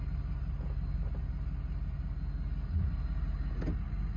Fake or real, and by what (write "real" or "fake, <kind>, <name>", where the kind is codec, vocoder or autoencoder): real